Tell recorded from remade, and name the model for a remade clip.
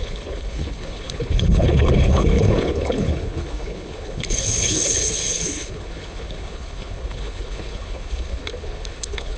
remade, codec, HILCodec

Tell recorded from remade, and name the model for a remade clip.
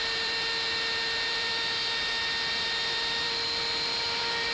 remade, vocoder, BigVGAN v2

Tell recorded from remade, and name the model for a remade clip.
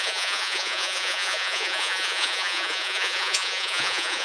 remade, vocoder, Vocos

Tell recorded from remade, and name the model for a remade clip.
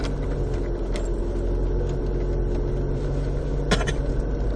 recorded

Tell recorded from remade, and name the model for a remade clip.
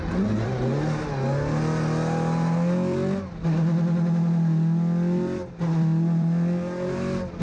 recorded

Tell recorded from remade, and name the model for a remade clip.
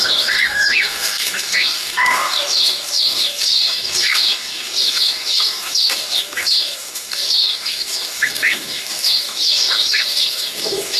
remade, codec, DAC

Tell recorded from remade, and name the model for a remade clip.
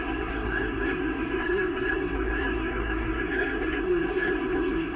remade, codec, SNAC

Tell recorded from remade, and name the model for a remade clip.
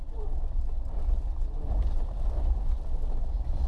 recorded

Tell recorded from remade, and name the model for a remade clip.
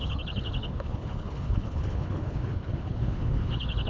remade, codec, HILCodec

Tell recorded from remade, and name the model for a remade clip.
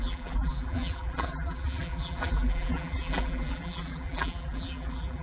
remade, vocoder, BigVGAN v2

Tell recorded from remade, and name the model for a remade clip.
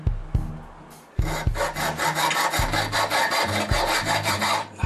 recorded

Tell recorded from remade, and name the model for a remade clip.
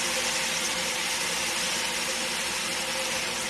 recorded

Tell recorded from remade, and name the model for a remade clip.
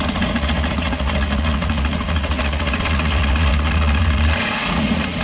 remade, vocoder, Vocos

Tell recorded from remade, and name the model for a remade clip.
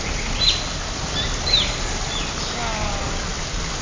recorded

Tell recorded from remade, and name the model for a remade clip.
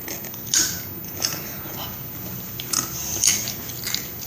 recorded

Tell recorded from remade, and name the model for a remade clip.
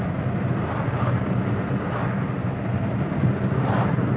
recorded